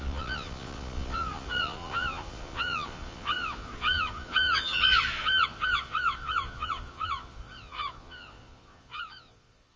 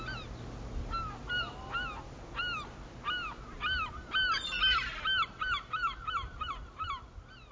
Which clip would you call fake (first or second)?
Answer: first